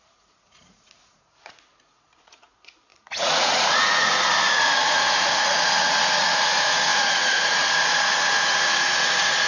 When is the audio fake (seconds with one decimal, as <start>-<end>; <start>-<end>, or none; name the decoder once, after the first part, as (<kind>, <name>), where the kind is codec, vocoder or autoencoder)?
0.0-9.5 (vocoder, Vocos)